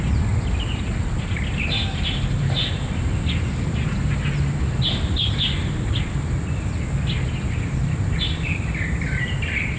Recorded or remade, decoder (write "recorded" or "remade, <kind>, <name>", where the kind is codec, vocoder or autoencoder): remade, vocoder, BigVGAN v2